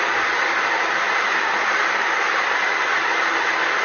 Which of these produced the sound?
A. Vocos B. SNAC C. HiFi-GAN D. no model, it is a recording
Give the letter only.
D